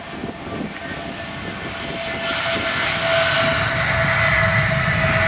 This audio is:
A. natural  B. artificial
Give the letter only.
A